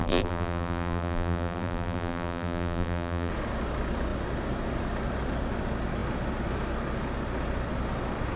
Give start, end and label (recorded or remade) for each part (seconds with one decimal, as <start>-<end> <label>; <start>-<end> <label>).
0.0-3.3 remade; 3.3-8.4 recorded